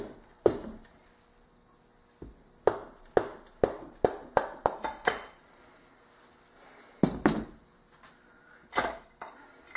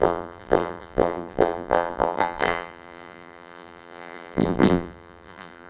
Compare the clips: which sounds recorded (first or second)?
first